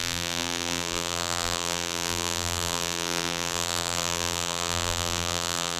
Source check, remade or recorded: remade